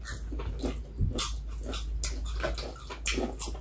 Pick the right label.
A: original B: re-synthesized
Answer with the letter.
A